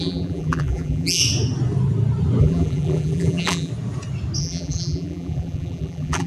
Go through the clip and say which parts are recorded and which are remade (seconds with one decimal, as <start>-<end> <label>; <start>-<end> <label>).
0.0-1.2 remade; 1.2-2.4 recorded; 2.4-3.7 remade; 3.7-4.4 recorded; 4.4-6.3 remade